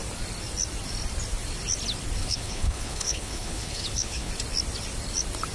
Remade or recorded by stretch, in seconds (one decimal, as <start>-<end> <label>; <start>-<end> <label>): 0.0-2.2 recorded; 2.2-4.3 remade; 4.3-5.5 recorded